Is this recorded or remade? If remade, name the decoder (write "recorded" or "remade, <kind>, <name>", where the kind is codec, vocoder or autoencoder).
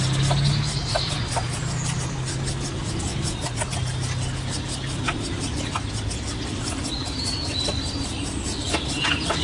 recorded